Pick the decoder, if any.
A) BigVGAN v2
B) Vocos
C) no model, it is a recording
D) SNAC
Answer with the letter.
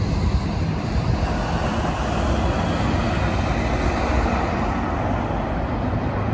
C